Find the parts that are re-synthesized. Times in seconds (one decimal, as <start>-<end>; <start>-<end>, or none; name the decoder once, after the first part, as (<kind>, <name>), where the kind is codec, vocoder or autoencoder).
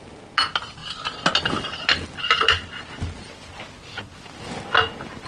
none